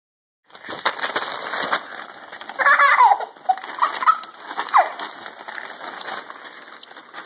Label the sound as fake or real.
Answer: real